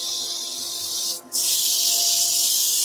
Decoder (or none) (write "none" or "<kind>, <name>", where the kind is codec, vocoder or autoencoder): none